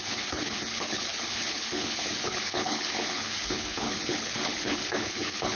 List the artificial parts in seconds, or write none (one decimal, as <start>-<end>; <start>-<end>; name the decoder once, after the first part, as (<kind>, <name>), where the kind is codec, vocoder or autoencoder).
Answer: 0.0-5.5 (codec, HILCodec)